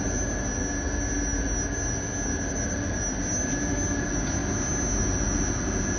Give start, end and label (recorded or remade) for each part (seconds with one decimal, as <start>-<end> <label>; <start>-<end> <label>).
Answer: 0.0-6.0 recorded